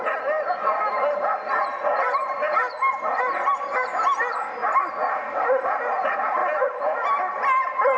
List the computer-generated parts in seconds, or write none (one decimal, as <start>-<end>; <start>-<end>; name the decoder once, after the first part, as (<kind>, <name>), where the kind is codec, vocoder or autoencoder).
none